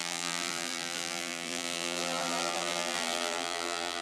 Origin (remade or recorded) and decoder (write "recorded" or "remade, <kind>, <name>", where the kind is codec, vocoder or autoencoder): remade, vocoder, BigVGAN v2